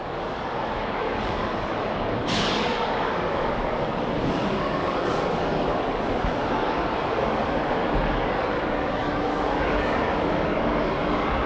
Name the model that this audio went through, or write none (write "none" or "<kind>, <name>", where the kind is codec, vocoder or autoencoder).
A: codec, DAC